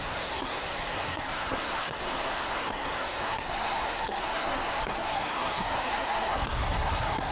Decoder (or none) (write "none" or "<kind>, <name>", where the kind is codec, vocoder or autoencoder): codec, SNAC